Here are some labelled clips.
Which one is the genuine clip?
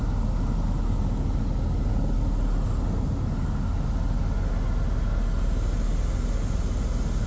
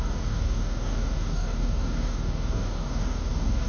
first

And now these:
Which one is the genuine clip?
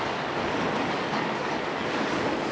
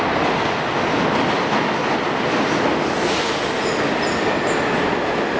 second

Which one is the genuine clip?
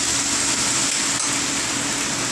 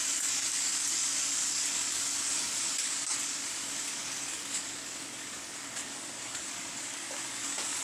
first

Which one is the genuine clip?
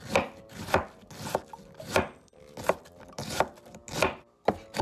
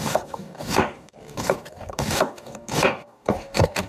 first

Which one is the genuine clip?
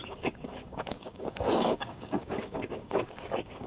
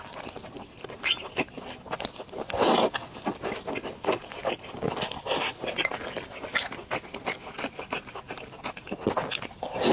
second